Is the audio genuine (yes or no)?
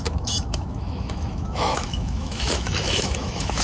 no